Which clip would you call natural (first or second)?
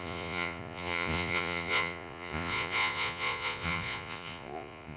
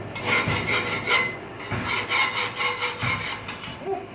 second